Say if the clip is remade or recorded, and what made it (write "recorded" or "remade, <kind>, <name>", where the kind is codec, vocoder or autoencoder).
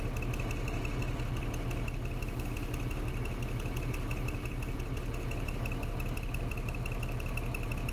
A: recorded